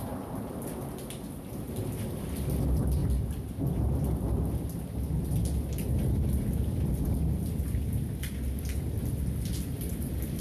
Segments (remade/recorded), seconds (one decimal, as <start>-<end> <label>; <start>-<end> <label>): 0.0-10.4 recorded